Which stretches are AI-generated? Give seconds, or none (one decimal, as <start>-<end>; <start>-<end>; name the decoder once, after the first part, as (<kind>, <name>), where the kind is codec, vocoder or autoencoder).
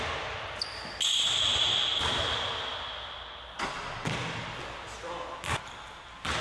none